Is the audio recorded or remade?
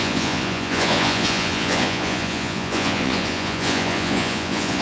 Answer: remade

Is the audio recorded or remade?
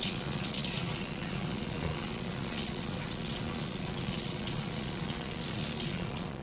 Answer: remade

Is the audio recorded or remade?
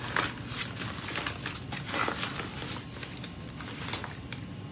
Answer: recorded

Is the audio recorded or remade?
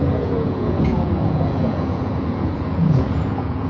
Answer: remade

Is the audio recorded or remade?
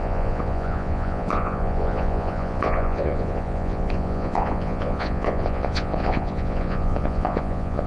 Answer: remade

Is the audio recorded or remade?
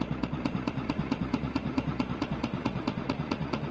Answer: remade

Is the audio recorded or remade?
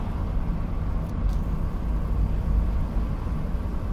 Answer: recorded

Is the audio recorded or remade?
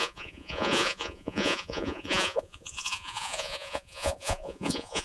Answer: remade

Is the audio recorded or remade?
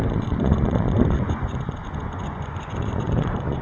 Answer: remade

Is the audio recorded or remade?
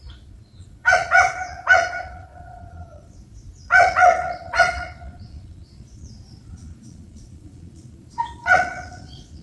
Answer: remade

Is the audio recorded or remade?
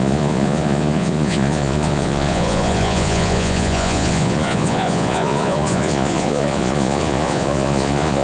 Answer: remade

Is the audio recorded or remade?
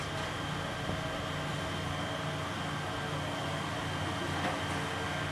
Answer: recorded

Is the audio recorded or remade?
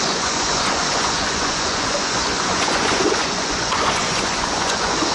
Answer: remade